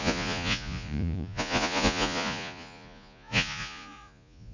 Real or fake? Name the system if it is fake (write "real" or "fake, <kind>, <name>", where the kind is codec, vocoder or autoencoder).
fake, vocoder, Vocos